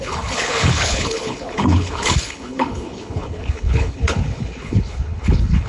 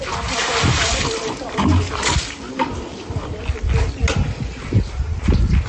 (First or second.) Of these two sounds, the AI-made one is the first